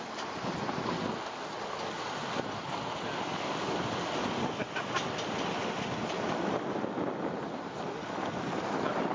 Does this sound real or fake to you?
real